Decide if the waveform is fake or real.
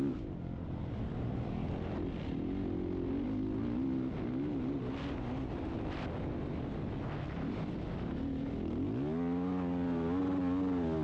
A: real